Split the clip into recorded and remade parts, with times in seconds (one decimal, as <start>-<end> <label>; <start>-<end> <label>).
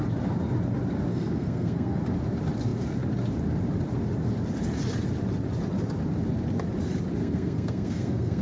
0.0-1.1 recorded; 1.1-2.0 remade; 2.0-7.2 recorded; 7.2-8.4 remade